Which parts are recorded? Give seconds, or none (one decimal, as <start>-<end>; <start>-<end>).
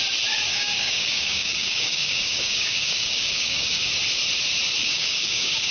0.0-0.5; 3.9-4.8